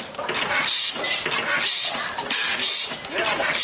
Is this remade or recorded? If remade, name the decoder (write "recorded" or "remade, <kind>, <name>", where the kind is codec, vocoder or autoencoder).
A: recorded